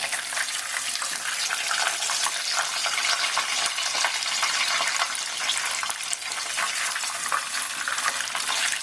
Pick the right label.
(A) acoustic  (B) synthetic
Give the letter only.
A